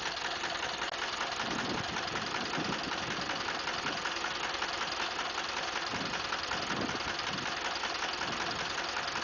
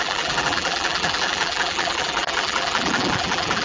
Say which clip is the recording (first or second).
first